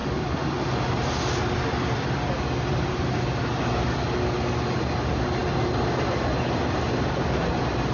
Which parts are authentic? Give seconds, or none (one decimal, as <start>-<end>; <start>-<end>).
3.6-7.9